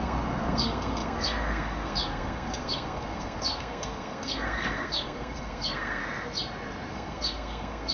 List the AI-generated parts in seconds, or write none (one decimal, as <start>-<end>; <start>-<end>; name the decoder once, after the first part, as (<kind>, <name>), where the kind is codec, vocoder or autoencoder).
0.0-6.0 (codec, SNAC); 6.9-7.9